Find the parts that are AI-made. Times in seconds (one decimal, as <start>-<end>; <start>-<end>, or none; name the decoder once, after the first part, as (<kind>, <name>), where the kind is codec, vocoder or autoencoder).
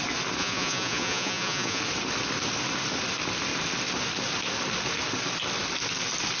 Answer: 0.4-1.8 (vocoder, Vocos)